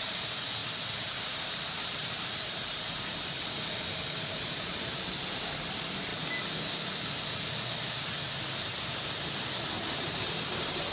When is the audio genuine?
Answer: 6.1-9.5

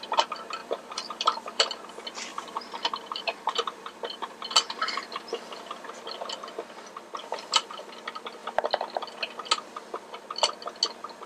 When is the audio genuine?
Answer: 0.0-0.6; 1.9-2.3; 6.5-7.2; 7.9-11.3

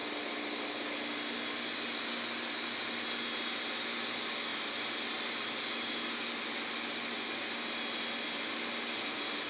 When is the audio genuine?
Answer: 0.0-9.5

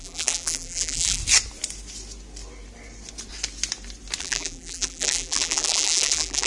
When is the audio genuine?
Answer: 1.2-4.2

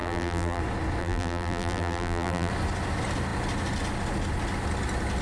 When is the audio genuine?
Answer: 0.6-1.0; 2.5-5.2

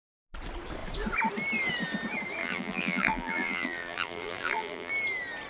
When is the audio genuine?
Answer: 0.0-2.4; 4.9-5.5